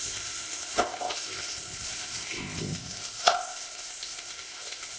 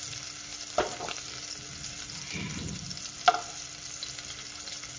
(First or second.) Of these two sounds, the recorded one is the second